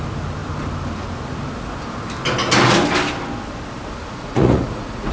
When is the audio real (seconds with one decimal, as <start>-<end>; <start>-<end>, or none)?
0.0-4.1